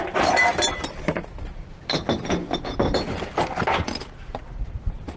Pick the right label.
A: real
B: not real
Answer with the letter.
A